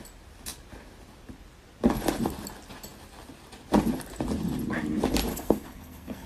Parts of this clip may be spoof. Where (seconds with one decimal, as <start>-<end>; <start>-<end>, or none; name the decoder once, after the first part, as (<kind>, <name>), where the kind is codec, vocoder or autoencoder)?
5.3-6.3 (codec, SNAC)